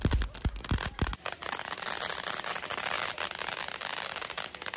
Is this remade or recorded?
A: recorded